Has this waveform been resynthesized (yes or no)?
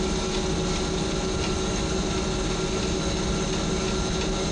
no